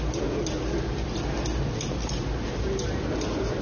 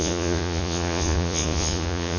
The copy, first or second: second